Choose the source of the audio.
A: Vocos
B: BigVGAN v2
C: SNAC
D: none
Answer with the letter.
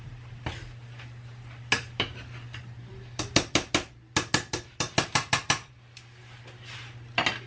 D